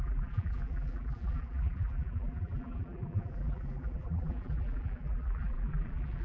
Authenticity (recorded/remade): remade